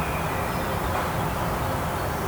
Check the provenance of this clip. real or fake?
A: real